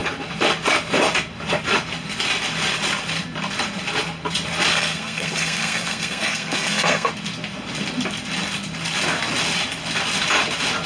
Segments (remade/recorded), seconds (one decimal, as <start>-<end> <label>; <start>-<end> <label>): 0.0-4.7 recorded; 4.7-7.1 remade; 7.1-10.9 recorded